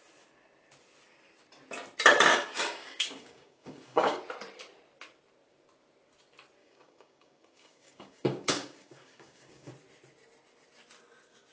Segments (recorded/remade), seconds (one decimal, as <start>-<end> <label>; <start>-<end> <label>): 0.0-2.3 recorded; 2.3-4.2 remade; 4.2-6.6 recorded; 6.6-9.7 remade; 9.7-11.5 recorded